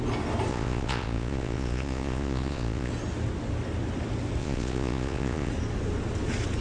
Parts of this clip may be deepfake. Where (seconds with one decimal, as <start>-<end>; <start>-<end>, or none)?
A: 0.5-2.9; 4.4-5.5